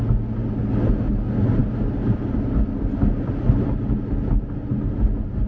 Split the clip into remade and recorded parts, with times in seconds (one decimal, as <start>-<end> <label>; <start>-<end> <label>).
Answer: 0.0-5.5 recorded